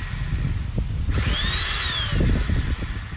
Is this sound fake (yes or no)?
no